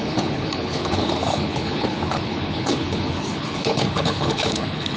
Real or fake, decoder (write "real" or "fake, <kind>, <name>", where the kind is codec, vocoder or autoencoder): fake, codec, HILCodec